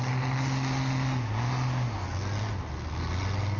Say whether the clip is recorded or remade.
recorded